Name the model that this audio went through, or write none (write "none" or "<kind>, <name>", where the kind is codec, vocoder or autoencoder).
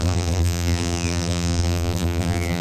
vocoder, BigVGAN v2